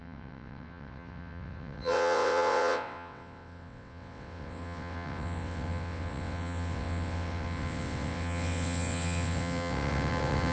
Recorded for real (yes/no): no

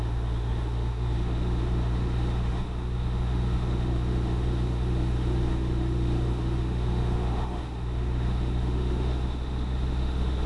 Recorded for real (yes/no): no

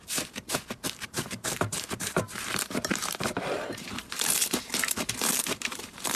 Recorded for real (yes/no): no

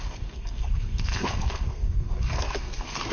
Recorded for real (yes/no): no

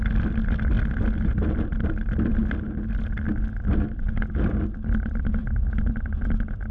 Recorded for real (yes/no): yes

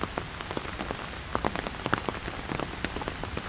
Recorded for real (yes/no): yes